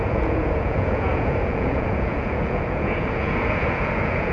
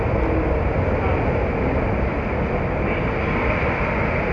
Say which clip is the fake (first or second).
first